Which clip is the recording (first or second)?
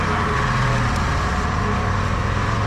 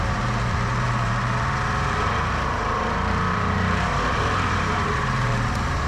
first